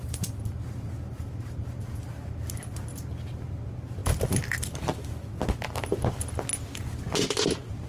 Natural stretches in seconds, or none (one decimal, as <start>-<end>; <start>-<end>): 0.0-7.9